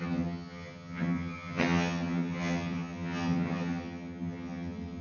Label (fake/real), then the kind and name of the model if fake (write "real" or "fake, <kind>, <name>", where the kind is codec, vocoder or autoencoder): fake, vocoder, HiFi-GAN